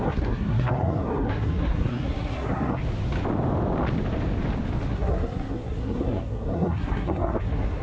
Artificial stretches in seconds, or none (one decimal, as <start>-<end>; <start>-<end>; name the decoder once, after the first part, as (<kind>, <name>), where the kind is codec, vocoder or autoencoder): 0.0-2.8 (codec, SNAC); 4.9-7.8